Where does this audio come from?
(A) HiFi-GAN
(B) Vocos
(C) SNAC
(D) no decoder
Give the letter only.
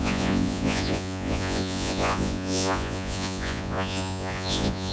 B